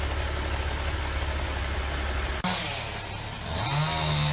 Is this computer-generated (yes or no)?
no